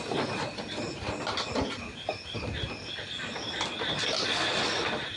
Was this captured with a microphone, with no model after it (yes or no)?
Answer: yes